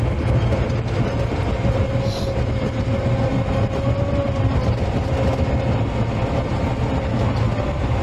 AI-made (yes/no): no